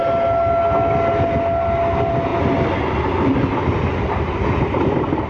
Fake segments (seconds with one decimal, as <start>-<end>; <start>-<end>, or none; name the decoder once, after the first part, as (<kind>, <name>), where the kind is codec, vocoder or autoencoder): none